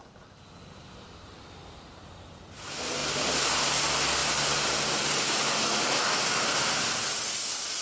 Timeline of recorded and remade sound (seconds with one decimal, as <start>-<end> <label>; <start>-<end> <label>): 0.0-7.8 recorded